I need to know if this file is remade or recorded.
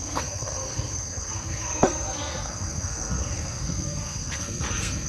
remade